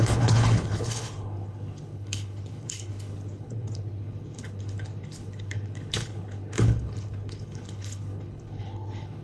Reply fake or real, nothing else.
fake